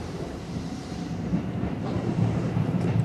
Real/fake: fake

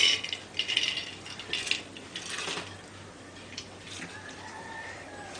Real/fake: real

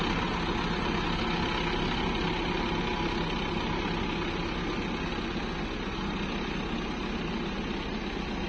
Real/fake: real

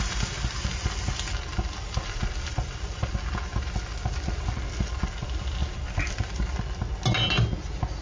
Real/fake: real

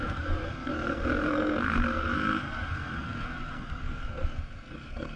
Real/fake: fake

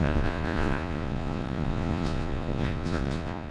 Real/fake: fake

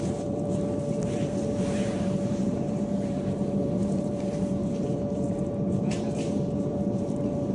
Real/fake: fake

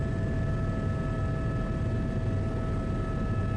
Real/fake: real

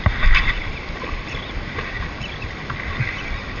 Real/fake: real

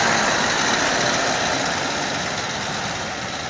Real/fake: real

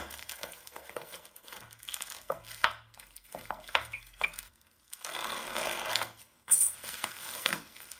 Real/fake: fake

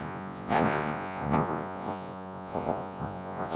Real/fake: fake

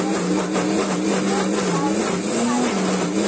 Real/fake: real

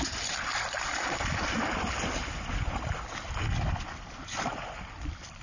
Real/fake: fake